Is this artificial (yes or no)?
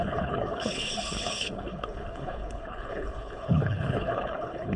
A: yes